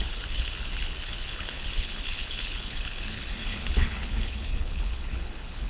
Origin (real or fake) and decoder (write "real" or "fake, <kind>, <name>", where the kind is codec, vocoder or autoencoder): fake, codec, HILCodec